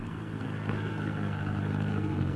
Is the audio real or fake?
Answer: fake